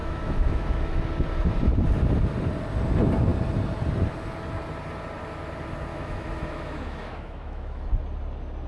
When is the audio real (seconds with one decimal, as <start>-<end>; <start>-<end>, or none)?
1.0-5.9; 7.8-8.7